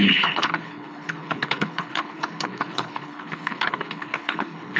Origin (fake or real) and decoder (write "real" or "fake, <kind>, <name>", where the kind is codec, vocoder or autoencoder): fake, codec, HILCodec